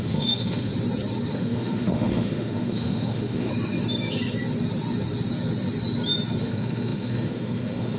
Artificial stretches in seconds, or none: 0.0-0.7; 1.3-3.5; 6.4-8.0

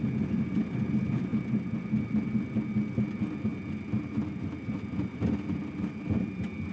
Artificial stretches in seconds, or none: none

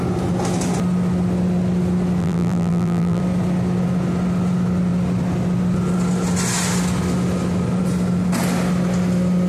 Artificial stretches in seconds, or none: 2.2-3.2